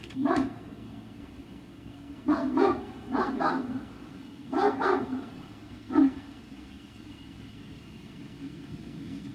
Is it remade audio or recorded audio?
remade